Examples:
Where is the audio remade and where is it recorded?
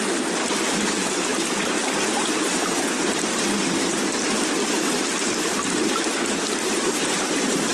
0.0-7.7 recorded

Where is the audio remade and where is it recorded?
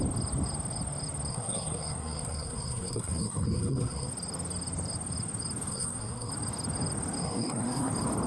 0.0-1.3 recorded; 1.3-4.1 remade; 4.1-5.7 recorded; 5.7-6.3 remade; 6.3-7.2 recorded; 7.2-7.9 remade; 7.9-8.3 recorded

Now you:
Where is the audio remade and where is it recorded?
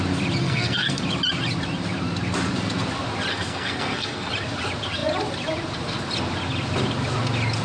0.0-0.4 recorded; 0.4-1.0 remade; 1.0-3.3 recorded; 3.3-4.3 remade; 4.3-7.6 recorded